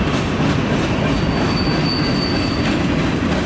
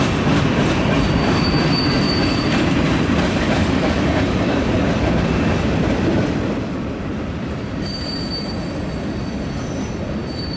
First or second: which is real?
first